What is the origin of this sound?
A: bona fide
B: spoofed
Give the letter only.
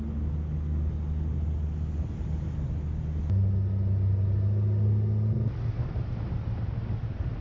A